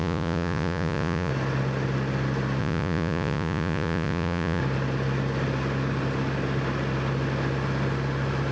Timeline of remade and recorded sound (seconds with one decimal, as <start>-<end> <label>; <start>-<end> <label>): 0.0-1.3 remade; 1.3-2.6 recorded; 2.6-4.6 remade; 4.6-8.5 recorded